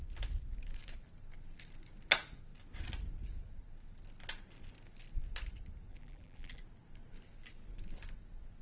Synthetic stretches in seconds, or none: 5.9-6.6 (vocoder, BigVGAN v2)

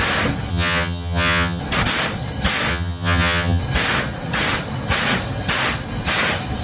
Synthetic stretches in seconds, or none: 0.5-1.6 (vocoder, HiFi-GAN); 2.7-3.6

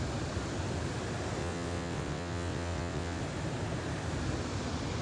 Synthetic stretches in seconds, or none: 1.4-3.2 (vocoder, WaveNeXt)